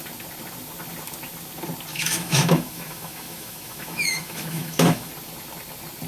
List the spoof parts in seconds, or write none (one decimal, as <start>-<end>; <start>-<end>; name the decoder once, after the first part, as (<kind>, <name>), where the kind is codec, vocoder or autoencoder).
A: 1.9-5.1 (autoencoder, DAC-VAE)